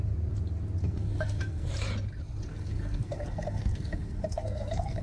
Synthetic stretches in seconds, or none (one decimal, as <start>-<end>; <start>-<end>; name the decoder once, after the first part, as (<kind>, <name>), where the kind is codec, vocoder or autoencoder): 0.8-1.7 (codec, SNAC); 2.5-5.0